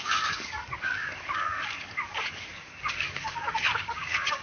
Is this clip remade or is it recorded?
remade